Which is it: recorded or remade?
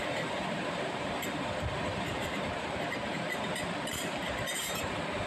remade